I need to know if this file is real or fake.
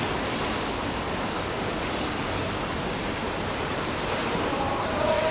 real